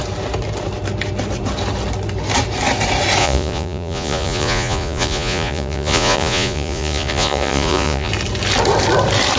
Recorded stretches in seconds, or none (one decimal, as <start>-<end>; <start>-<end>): 0.0-3.2; 8.1-9.4